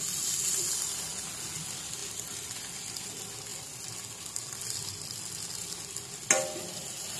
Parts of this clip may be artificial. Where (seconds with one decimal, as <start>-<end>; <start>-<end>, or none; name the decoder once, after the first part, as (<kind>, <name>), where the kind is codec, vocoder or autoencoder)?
none